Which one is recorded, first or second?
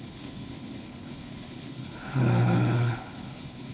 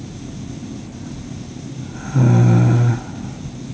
second